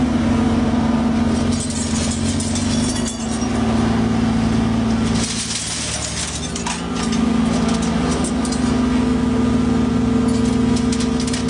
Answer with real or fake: real